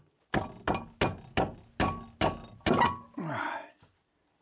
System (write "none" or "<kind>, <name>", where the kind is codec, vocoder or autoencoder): none